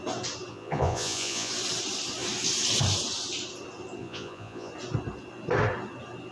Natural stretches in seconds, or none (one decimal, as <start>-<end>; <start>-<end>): 0.0-0.5; 1.5-4.0; 4.7-6.3